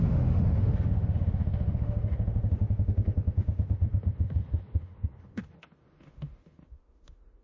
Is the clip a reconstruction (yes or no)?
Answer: yes